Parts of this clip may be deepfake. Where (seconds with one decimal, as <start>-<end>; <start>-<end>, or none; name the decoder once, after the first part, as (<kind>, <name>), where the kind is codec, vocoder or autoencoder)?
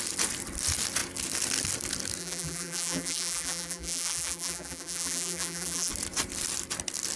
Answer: 2.2-5.9 (vocoder, BigVGAN v2)